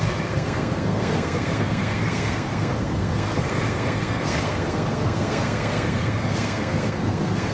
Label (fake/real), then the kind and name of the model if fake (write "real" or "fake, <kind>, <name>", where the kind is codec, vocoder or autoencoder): fake, codec, SNAC